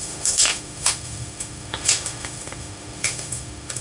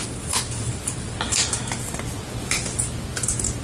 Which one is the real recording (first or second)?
second